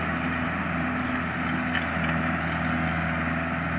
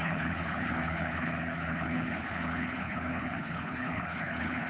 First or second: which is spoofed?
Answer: second